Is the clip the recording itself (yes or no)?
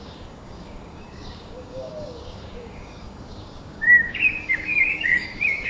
no